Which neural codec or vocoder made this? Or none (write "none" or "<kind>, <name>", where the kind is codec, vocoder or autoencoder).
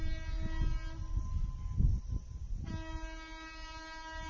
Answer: none